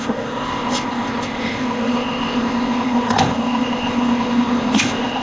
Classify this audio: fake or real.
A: fake